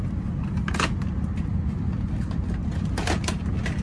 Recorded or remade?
recorded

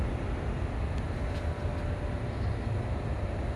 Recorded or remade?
recorded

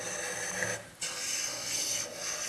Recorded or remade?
recorded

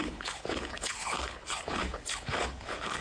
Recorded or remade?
remade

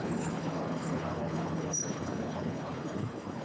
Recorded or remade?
remade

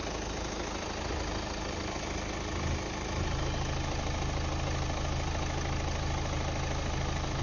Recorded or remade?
recorded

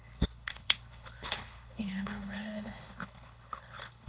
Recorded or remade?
remade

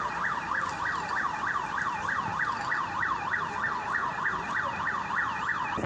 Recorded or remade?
recorded